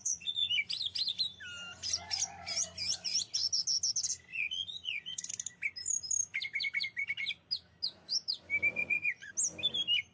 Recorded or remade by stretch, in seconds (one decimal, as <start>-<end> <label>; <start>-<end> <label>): 0.0-0.5 remade; 0.5-4.3 recorded; 4.3-5.3 remade; 5.3-8.7 recorded; 8.7-9.3 remade; 9.3-10.1 recorded